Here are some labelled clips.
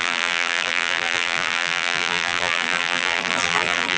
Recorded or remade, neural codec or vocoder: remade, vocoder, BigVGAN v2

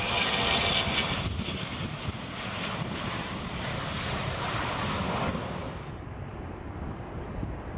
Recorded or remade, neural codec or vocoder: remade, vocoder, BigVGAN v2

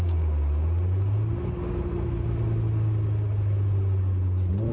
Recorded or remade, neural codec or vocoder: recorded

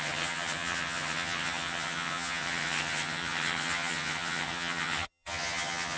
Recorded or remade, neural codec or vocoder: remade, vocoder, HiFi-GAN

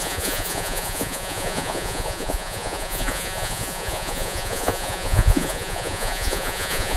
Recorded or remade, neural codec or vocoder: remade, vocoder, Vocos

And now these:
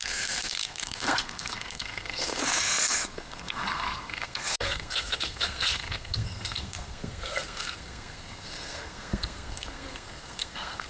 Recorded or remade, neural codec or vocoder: remade, codec, SNAC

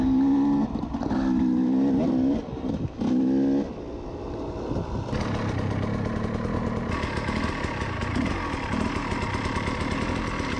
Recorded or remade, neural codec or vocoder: recorded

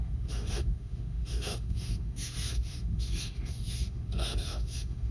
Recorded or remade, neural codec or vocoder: remade, autoencoder, DAC-VAE